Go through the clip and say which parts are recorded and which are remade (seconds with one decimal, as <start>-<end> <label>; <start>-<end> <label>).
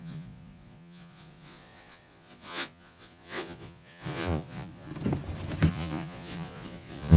0.0-4.9 remade; 4.9-5.7 recorded; 5.7-7.2 remade